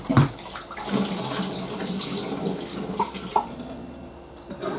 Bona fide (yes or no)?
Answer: yes